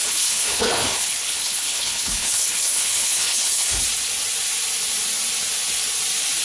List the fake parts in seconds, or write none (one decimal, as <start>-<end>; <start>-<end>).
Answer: 0.0-3.8